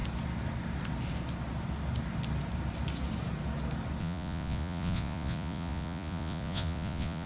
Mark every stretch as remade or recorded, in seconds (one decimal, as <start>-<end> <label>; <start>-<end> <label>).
0.0-4.0 recorded; 4.0-7.3 remade